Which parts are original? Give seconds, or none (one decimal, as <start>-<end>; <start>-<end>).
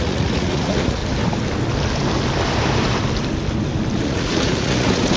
1.0-4.0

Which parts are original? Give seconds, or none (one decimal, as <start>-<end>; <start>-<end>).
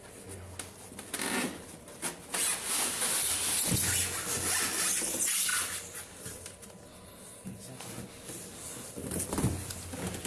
0.0-10.3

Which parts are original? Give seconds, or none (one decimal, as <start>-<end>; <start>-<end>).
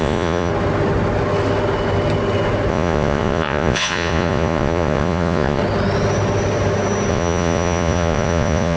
0.5-2.7; 5.6-7.1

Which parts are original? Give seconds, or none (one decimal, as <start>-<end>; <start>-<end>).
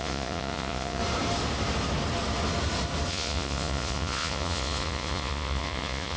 1.0-3.1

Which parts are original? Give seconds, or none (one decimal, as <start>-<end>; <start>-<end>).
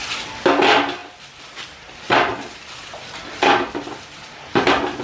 0.0-5.0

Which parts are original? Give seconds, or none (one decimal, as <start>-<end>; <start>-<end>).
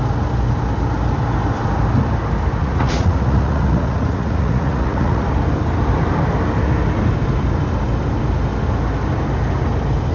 0.0-2.6; 5.3-10.1